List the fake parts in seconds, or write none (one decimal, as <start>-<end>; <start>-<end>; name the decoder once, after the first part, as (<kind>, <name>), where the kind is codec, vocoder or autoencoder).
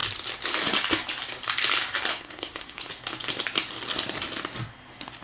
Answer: 2.1-2.9 (codec, SNAC)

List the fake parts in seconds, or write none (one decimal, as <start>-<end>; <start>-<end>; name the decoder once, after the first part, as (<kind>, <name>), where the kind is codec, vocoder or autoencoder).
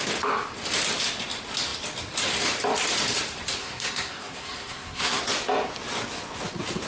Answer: 3.6-5.2 (codec, SNAC)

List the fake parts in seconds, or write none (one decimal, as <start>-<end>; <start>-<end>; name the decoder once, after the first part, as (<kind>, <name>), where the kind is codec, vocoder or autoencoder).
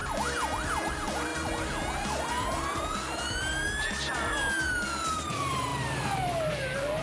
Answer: 0.9-1.3 (vocoder, BigVGAN v2); 2.8-3.5; 4.6-7.0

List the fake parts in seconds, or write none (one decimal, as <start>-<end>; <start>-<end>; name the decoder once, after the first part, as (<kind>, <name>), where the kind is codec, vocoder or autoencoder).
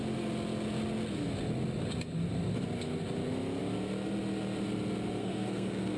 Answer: 5.2-6.0 (codec, SNAC)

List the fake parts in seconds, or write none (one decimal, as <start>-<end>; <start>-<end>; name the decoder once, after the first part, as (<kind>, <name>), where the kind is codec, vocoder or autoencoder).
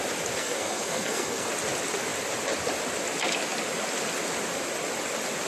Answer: 0.4-1.5 (codec, SNAC)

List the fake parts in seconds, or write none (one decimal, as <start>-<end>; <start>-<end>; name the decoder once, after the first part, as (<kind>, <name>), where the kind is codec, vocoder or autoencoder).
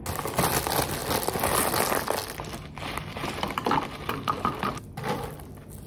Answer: none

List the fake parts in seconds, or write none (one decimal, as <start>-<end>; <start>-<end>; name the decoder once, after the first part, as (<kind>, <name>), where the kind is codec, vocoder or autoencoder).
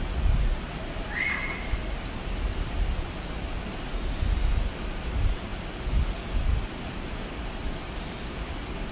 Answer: none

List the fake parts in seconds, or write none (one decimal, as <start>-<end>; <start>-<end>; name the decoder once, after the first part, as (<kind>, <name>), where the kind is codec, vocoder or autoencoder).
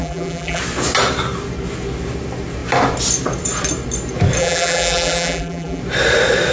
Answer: 0.0-0.6 (vocoder, BigVGAN v2); 4.4-5.8